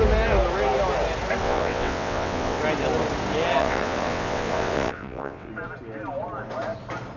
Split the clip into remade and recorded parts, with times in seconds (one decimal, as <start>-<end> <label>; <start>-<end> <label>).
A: 0.0-1.4 recorded; 1.4-2.6 remade; 2.6-3.6 recorded; 3.6-5.5 remade; 5.5-7.2 recorded